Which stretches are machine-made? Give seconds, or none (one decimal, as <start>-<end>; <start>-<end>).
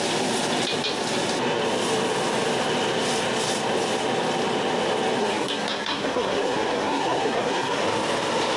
5.2-7.8